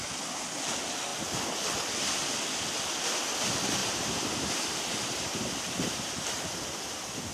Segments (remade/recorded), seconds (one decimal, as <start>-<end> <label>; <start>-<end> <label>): 0.0-3.8 recorded; 3.8-7.3 remade